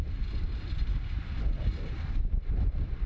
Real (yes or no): yes